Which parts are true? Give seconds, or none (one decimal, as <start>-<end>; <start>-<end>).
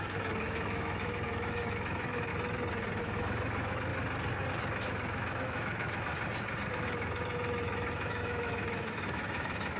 2.3-3.0; 3.9-4.8; 6.1-6.7